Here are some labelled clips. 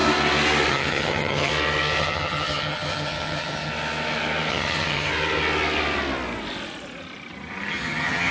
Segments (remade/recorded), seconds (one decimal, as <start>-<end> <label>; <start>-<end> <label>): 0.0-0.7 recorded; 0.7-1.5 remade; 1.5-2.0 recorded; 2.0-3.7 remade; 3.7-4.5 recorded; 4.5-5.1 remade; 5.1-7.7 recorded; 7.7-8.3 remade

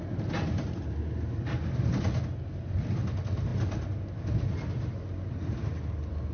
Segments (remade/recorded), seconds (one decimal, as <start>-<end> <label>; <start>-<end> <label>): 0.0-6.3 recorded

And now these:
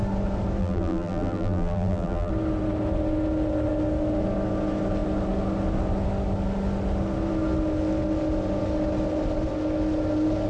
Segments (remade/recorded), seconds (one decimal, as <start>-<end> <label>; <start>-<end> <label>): 0.0-0.6 recorded; 0.6-2.3 remade; 2.3-10.5 recorded

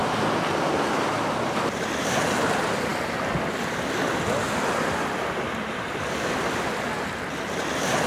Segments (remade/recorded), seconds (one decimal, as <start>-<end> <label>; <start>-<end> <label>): 0.0-8.1 recorded

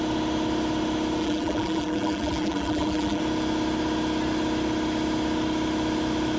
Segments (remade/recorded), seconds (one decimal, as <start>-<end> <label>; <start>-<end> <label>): 0.0-1.2 recorded; 1.2-3.2 remade; 3.2-6.4 recorded